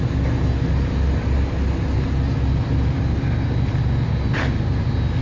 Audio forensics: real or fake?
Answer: real